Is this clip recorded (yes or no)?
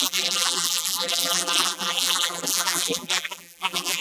no